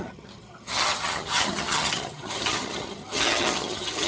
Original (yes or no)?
no